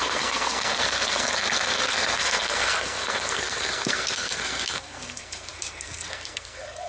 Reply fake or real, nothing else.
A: fake